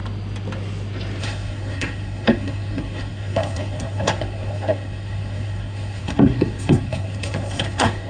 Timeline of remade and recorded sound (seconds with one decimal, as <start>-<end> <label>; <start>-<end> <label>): 0.0-1.2 recorded; 1.2-8.1 remade